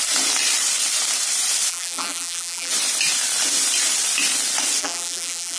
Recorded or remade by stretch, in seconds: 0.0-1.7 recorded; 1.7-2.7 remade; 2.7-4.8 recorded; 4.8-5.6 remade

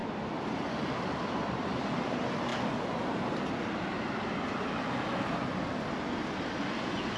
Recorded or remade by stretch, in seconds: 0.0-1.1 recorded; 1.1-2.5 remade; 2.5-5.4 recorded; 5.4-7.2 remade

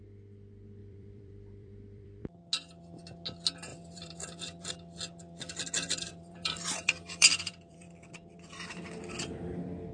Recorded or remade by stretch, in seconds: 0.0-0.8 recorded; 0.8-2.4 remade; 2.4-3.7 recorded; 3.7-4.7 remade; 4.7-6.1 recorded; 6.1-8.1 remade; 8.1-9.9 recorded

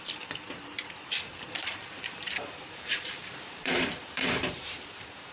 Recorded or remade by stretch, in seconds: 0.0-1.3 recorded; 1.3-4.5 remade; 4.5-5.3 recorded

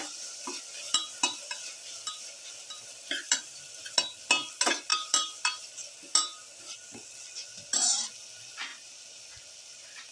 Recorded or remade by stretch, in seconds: 0.0-2.2 remade; 2.2-4.9 recorded; 4.9-5.6 remade; 5.6-8.7 recorded; 8.7-10.1 remade